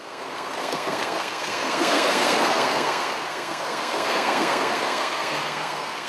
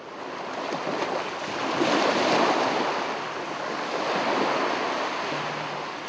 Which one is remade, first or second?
first